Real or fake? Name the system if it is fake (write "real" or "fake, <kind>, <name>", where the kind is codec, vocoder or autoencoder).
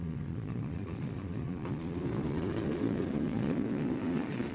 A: fake, vocoder, Vocos